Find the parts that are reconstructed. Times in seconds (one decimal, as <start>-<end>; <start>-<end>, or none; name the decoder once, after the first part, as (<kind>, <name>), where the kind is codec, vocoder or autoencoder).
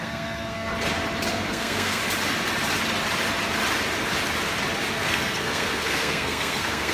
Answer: 0.0-0.7 (codec, SNAC); 1.3-2.0; 4.9-6.9